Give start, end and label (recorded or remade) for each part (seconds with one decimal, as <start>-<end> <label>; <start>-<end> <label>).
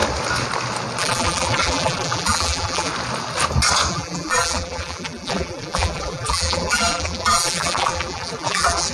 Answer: 0.0-1.0 recorded; 1.0-2.9 remade; 2.9-3.9 recorded; 3.9-8.9 remade